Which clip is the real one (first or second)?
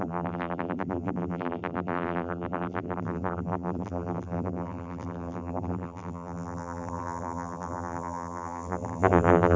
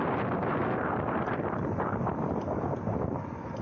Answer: second